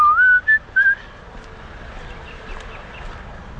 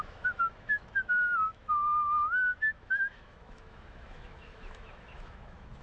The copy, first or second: second